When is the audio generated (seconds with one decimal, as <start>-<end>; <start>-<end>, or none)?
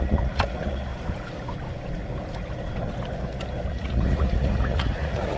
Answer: 0.0-0.9; 3.7-5.4